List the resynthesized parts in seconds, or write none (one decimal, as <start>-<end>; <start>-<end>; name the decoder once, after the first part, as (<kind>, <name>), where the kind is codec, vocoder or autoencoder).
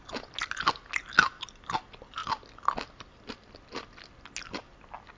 none